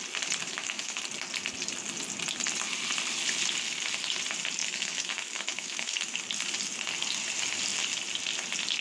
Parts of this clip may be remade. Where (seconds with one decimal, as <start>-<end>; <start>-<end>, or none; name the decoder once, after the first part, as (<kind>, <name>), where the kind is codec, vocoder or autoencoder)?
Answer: 0.4-1.0 (autoencoder, DAC-VAE); 4.6-6.2